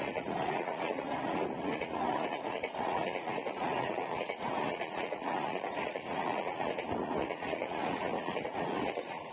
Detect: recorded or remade remade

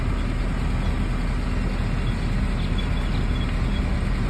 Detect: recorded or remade recorded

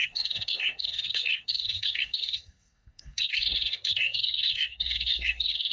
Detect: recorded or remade remade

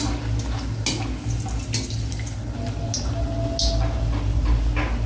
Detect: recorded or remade recorded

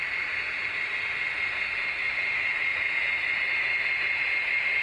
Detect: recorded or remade recorded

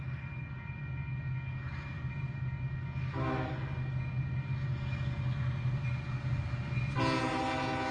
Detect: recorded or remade recorded